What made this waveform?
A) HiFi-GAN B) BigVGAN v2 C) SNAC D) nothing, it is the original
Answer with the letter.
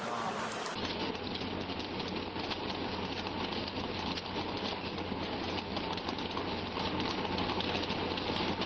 D